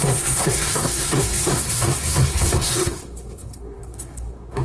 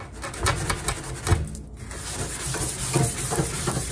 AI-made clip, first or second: first